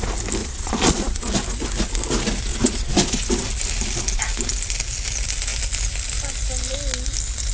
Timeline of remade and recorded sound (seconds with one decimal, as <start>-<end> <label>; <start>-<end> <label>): 0.0-0.4 recorded; 0.4-1.3 remade; 1.3-2.5 recorded; 2.5-3.2 remade; 3.2-7.5 recorded